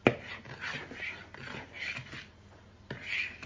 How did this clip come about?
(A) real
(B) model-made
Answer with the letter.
A